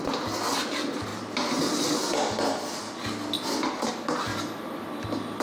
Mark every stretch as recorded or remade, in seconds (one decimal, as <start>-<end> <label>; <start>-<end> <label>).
0.0-4.3 recorded; 4.3-5.4 remade